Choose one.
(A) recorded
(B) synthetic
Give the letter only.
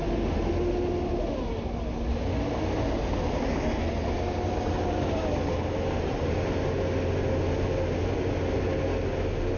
A